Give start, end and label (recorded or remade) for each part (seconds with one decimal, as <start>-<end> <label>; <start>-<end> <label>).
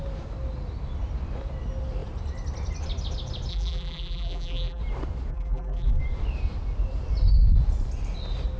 0.0-3.5 recorded; 3.5-4.8 remade; 4.8-5.3 recorded; 5.3-6.0 remade; 6.0-8.6 recorded